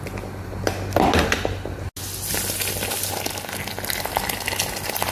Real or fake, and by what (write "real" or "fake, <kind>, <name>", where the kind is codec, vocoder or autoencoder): real